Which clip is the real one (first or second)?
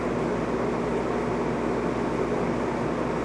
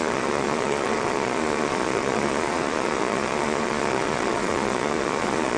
first